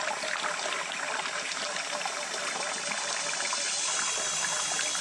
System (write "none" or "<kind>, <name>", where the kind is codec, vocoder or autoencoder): none